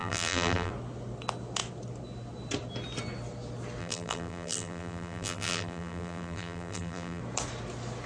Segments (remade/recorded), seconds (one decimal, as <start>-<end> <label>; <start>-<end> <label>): 0.0-0.7 remade; 0.7-3.8 recorded; 3.8-7.2 remade; 7.2-8.1 recorded